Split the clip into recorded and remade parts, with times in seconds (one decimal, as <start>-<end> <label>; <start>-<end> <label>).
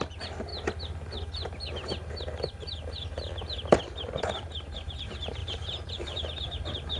0.0-0.5 remade; 0.5-4.2 recorded; 4.2-7.0 remade